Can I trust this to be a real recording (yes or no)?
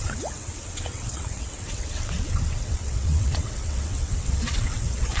no